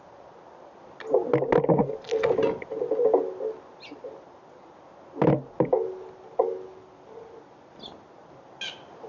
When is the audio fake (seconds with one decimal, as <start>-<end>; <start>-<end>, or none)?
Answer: none